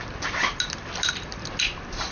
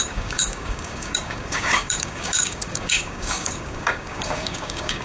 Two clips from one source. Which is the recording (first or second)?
first